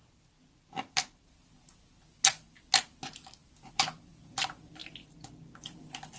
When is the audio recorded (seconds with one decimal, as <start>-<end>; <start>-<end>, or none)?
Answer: 0.0-6.2